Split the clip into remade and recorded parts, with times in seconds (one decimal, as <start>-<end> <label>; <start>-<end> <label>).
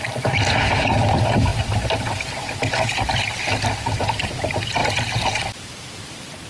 0.0-6.5 remade